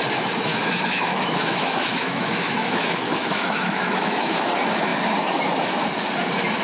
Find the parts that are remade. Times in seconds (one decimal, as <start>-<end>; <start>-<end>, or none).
0.5-4.5